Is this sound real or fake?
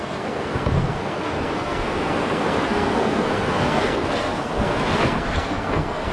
fake